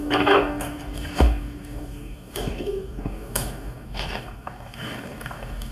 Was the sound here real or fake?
fake